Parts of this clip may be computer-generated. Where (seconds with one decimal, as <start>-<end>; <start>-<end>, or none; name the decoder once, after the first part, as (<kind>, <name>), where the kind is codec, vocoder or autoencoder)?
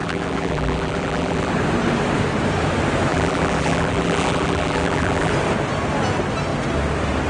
0.0-1.5 (vocoder, BigVGAN v2); 3.1-5.3